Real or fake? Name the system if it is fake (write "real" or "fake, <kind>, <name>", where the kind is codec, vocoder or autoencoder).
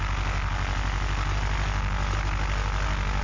real